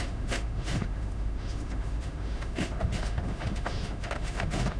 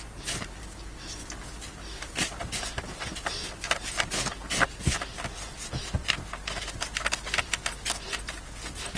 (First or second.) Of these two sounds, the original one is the second